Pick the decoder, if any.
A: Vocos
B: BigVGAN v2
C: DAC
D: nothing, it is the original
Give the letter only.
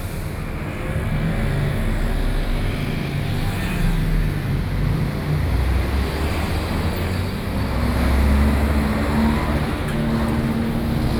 D